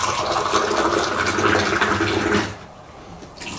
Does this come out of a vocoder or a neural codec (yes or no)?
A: no